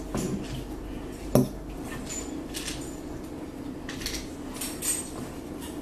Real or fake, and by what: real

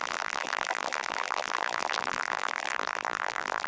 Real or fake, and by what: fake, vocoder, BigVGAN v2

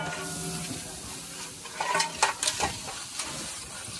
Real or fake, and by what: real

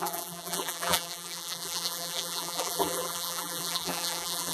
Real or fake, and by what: fake, vocoder, BigVGAN v2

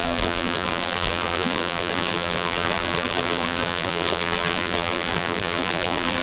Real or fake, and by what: fake, vocoder, BigVGAN v2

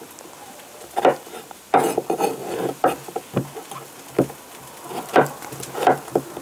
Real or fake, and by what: real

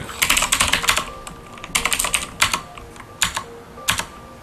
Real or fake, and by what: real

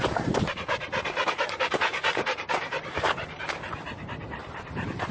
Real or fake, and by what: fake, vocoder, BigVGAN v2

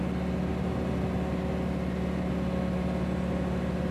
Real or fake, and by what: real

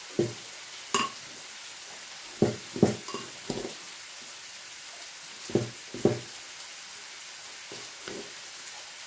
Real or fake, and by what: real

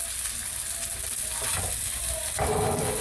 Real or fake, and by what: real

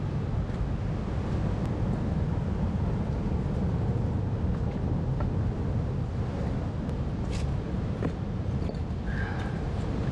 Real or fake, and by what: real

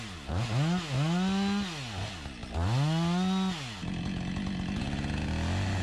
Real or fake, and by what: real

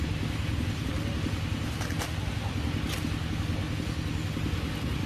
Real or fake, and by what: real